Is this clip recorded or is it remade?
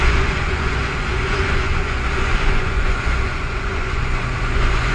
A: remade